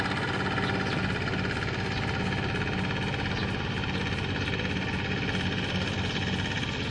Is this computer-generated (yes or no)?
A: no